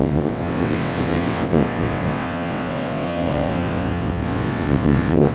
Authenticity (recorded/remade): remade